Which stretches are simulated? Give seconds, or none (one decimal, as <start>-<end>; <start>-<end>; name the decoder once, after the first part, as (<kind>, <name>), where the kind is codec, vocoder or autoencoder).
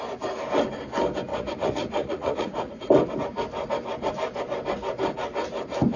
1.3-2.9 (vocoder, Vocos)